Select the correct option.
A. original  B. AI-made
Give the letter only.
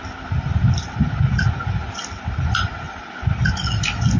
A